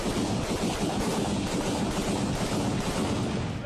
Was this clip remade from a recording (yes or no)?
no